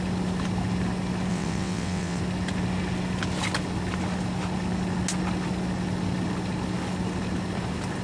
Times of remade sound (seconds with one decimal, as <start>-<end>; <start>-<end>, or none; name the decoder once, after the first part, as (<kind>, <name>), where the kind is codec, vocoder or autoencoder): 1.3-2.2 (vocoder, WaveNeXt)